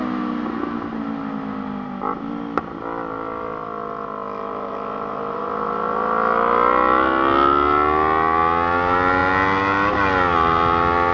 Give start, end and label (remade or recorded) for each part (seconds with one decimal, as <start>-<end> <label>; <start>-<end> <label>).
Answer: 0.0-11.1 recorded